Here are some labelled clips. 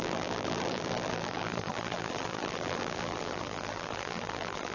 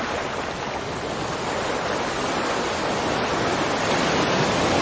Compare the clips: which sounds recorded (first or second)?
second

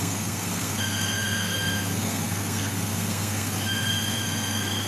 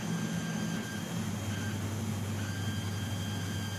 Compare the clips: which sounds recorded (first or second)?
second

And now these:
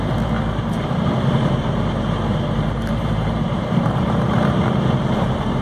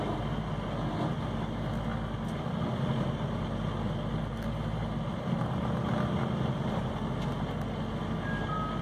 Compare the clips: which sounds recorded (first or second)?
second